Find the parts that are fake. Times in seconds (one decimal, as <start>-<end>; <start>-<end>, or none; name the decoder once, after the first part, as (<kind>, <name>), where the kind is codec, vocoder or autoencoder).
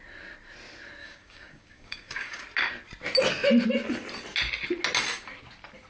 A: 1.0-2.4 (codec, DAC)